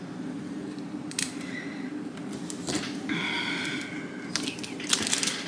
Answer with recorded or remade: recorded